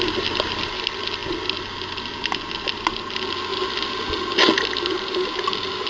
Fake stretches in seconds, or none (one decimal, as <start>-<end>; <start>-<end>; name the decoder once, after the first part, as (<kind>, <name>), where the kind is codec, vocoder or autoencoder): none

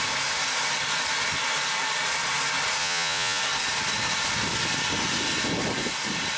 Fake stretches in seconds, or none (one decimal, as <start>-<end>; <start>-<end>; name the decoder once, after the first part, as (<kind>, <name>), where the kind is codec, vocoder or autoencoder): 2.8-3.4 (vocoder, Vocos)

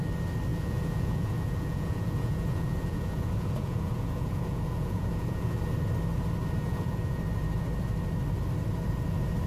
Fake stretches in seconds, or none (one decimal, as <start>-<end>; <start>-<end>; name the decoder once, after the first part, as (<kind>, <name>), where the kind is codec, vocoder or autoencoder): 0.5-5.6 (vocoder, Vocos); 6.6-7.2

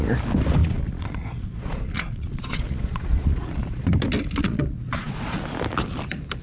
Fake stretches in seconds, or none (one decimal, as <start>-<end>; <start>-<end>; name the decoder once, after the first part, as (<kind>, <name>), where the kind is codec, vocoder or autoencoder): 0.6-3.9 (vocoder, Vocos); 4.4-5.4

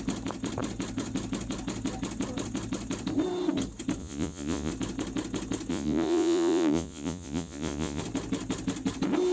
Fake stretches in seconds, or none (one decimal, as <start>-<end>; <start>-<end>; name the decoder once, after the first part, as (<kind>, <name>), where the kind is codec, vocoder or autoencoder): 4.0-4.7 (vocoder, Vocos); 5.7-8.0

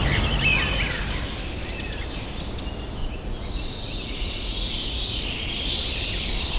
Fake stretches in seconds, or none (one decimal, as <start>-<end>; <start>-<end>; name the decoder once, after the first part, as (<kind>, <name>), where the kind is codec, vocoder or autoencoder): 3.0-5.2 (vocoder, Vocos)

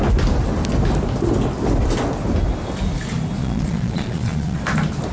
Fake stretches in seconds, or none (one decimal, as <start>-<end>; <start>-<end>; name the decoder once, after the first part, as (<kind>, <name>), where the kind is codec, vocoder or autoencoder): 3.4-4.6 (vocoder, Vocos)